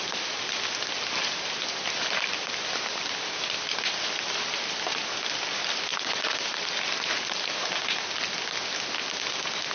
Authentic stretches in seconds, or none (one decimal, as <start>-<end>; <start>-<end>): 0.0-9.7